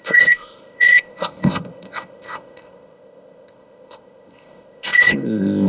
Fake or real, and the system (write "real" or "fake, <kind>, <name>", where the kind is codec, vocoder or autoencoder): fake, codec, ZipCodec